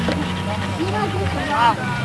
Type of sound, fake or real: real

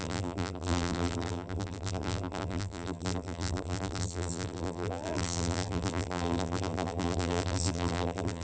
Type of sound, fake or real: fake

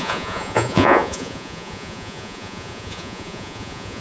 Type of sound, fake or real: fake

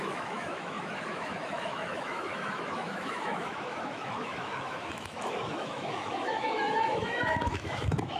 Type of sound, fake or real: fake